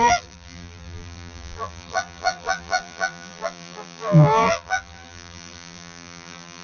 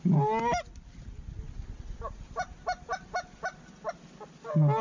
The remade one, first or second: first